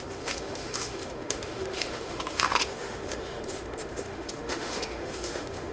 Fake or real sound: fake